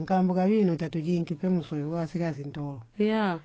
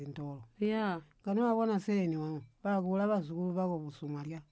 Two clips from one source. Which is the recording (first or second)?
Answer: second